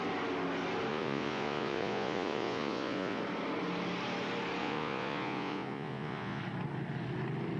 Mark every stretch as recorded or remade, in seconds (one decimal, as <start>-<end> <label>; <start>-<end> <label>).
0.0-0.9 recorded; 0.9-3.2 remade; 3.2-4.6 recorded; 4.6-6.4 remade; 6.4-7.6 recorded